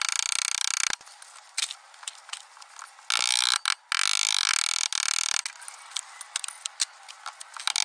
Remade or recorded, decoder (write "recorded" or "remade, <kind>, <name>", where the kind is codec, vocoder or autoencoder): recorded